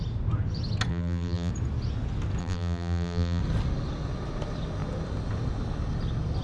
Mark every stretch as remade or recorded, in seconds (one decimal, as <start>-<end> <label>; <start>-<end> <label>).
0.0-0.9 recorded; 0.9-1.5 remade; 1.5-2.4 recorded; 2.4-3.4 remade; 3.4-6.4 recorded